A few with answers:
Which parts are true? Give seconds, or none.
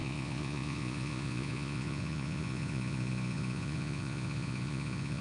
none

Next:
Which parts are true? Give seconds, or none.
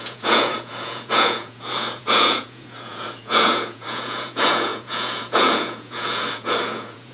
none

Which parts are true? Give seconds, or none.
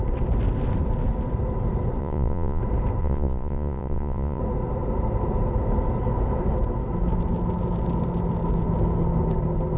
0.0-2.0; 2.6-3.0; 4.4-9.8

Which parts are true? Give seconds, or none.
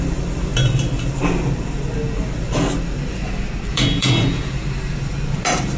0.0-3.7; 4.5-5.8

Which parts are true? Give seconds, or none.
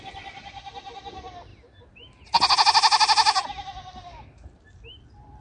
0.0-5.4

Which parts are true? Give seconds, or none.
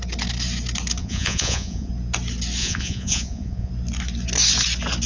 0.0-1.0; 1.9-2.6; 3.7-5.1